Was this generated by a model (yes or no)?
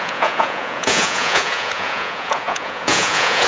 yes